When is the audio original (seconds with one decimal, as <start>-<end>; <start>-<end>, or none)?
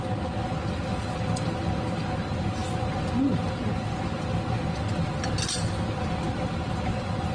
0.0-7.3